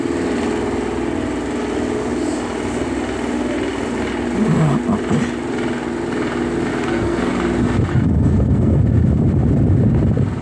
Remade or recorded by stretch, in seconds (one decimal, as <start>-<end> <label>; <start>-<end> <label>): 0.0-6.7 recorded; 6.7-7.3 remade; 7.3-7.9 recorded; 7.9-8.8 remade; 8.8-10.4 recorded